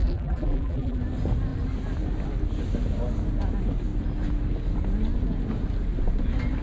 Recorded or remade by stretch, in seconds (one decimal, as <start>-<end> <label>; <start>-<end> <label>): 0.0-1.0 remade; 1.0-6.6 recorded